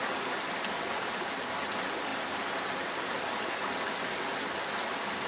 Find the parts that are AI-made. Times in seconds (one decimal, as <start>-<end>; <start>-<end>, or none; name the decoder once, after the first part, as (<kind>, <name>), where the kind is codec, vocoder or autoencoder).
none